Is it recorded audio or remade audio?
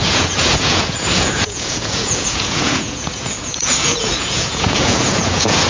remade